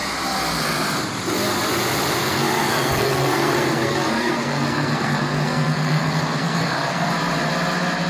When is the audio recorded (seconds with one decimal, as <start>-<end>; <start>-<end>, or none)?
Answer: 0.0-2.2; 7.1-8.1